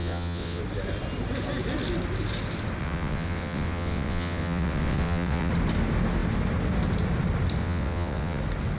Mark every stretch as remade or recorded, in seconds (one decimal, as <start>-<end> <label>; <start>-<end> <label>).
0.0-0.6 remade; 0.6-2.8 recorded; 2.8-5.5 remade; 5.5-7.6 recorded; 7.6-8.4 remade; 8.4-8.8 recorded